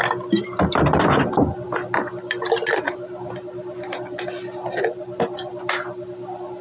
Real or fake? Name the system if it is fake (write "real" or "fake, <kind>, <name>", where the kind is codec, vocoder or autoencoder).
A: real